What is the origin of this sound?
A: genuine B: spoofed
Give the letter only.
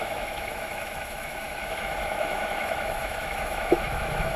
B